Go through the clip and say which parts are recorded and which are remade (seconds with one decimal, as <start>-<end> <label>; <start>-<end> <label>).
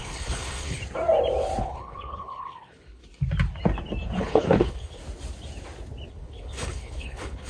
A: 0.0-0.8 remade; 0.8-1.6 recorded; 1.6-3.0 remade; 3.0-4.2 recorded; 4.2-5.0 remade; 5.0-6.1 recorded; 6.1-7.5 remade